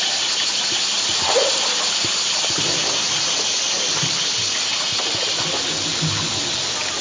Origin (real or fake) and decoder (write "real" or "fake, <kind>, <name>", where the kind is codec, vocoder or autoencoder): real